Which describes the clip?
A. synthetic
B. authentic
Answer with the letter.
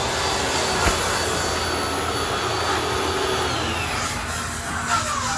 B